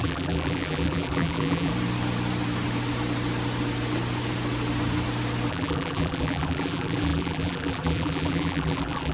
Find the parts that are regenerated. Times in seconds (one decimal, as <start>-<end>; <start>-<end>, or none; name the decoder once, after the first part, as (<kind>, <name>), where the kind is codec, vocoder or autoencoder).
0.0-1.7 (vocoder, BigVGAN v2); 5.5-9.1